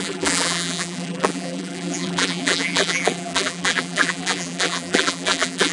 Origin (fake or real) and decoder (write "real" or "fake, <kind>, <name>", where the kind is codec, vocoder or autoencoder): fake, vocoder, BigVGAN v2